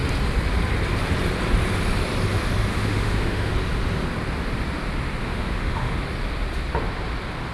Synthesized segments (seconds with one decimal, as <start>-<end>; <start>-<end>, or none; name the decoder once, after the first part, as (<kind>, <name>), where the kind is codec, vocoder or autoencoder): 2.7-3.5 (autoencoder, DAC-VAE); 5.2-6.0